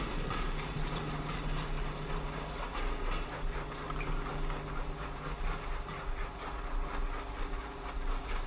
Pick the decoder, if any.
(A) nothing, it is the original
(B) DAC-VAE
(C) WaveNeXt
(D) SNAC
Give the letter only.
A